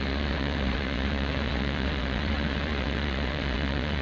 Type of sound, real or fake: fake